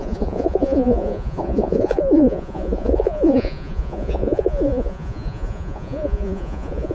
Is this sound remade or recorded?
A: remade